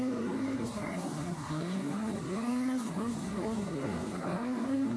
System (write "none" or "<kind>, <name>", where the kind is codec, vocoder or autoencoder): codec, SNAC